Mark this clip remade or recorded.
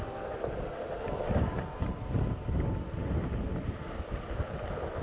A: recorded